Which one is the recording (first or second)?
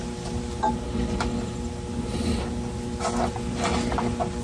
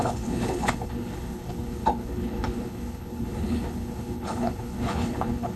first